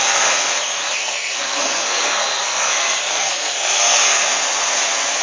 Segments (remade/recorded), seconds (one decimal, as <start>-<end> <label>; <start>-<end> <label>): 0.0-1.0 recorded; 1.0-4.1 remade; 4.1-5.2 recorded